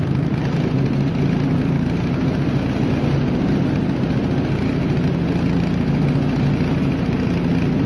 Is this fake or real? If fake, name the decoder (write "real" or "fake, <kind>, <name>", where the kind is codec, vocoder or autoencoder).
real